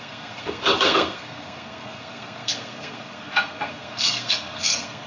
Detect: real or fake fake